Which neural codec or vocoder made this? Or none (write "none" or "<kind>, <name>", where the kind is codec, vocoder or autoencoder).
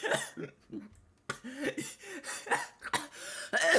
none